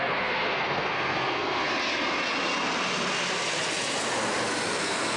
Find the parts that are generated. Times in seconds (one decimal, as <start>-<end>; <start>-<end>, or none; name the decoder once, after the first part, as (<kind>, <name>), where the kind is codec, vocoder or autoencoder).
0.0-1.7 (codec, SNAC); 4.8-5.2